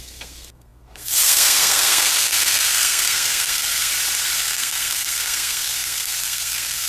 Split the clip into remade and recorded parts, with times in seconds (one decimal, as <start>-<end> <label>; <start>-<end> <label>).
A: 0.0-3.9 remade; 3.9-4.4 recorded; 4.4-6.9 remade